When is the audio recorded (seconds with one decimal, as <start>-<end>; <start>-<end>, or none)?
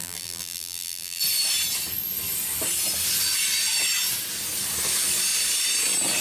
1.2-6.2